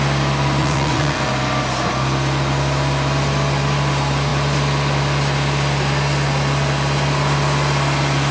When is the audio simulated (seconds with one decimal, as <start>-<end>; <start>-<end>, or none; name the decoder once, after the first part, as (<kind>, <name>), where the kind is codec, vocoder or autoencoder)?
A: 0.6-1.3 (vocoder, Vocos)